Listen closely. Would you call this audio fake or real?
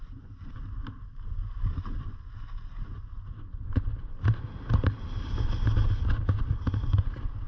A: real